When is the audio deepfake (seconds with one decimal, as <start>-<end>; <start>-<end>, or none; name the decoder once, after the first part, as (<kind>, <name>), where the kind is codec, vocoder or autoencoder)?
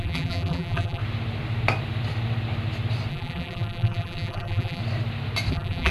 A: 0.0-1.0 (vocoder, BigVGAN v2); 3.1-4.8; 5.5-5.9